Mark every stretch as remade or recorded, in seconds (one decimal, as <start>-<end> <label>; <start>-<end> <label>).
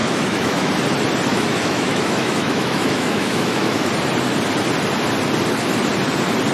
0.0-0.7 remade; 0.7-1.3 recorded; 1.3-3.9 remade; 3.9-6.5 recorded